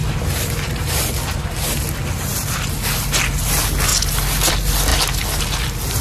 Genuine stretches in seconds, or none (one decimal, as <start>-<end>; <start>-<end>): 0.9-6.0

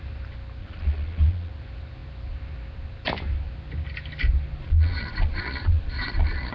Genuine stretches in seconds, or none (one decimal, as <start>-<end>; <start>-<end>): 0.0-0.6; 1.5-4.6